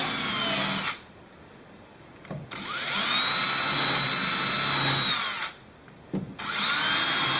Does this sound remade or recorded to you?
recorded